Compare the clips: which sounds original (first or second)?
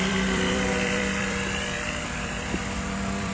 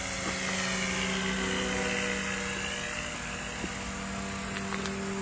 second